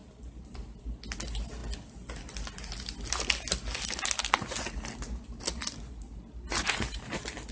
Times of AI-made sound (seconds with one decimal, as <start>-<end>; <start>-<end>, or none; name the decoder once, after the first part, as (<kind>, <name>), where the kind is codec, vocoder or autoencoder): none

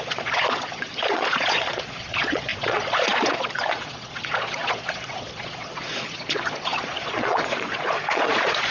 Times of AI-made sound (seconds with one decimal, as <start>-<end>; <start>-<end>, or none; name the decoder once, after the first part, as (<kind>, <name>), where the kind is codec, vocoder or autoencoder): 0.0-8.7 (vocoder, Vocos)

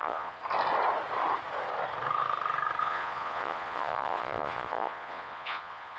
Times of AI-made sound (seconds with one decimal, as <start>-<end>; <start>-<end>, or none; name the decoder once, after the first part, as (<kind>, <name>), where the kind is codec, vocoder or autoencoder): 0.0-0.4 (vocoder, Vocos); 2.8-6.0